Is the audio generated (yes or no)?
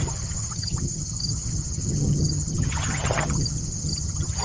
yes